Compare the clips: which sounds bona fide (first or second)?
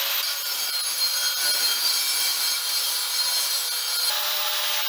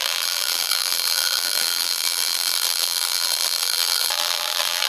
first